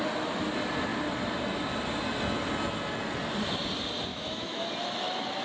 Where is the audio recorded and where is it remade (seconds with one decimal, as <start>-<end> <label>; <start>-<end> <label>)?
0.0-4.1 recorded; 4.1-4.7 remade; 4.7-5.4 recorded